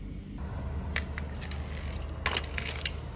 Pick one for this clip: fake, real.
real